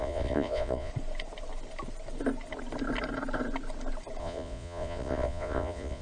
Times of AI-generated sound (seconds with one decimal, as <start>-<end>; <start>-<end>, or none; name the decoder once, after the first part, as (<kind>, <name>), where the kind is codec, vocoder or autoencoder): 0.0-0.9 (vocoder, Vocos); 4.2-6.0